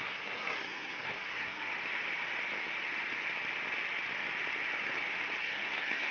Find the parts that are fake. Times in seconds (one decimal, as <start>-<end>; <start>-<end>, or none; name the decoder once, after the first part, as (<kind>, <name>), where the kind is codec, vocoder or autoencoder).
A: 0.0-1.7 (codec, SNAC); 5.4-6.1